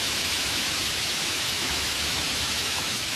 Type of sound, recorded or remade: remade